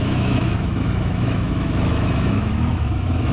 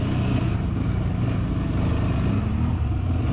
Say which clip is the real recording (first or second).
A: second